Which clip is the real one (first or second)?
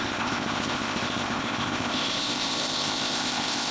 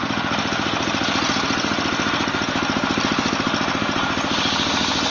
second